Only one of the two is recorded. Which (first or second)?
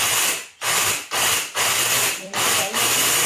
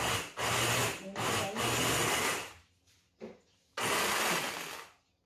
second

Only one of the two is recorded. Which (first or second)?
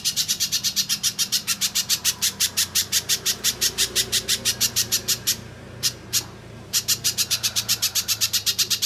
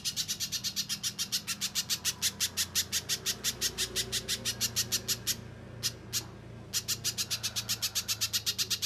second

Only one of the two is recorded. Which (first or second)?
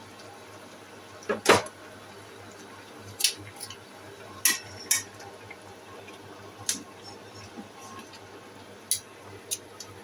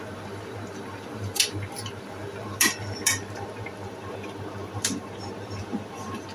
first